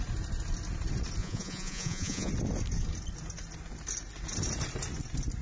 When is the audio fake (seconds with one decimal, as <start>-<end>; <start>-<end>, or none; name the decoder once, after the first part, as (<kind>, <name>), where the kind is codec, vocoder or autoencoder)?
1.2-2.3 (vocoder, Vocos)